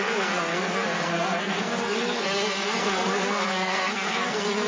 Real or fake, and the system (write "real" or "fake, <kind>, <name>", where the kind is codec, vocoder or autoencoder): fake, codec, SNAC